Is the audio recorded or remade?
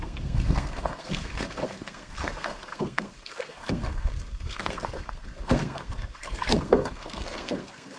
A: remade